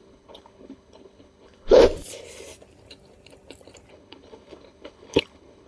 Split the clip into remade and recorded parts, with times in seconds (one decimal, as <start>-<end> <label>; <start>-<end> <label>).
0.0-1.8 remade; 1.8-3.9 recorded; 3.9-5.7 remade